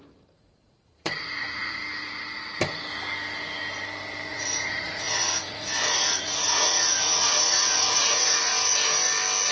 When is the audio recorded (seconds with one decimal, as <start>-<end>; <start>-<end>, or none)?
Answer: 1.8-4.3; 8.5-9.5